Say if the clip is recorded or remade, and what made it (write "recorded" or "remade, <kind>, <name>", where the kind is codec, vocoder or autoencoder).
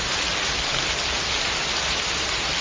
recorded